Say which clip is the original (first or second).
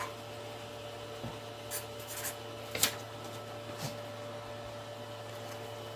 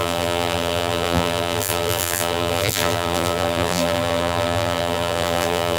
first